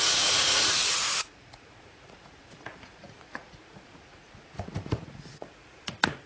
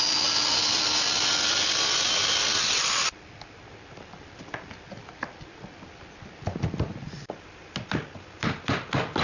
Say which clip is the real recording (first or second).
second